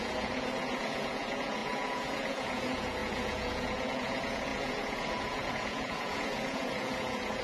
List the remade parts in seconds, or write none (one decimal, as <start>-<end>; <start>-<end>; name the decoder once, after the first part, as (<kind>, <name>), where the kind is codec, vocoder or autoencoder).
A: 0.0-7.4 (vocoder, Vocos)